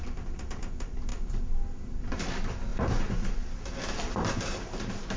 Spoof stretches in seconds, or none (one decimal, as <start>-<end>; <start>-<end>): none